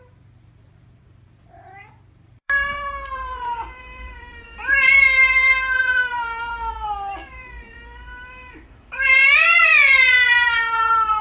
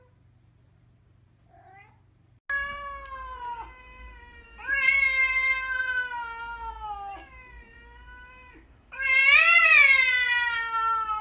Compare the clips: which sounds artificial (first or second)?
first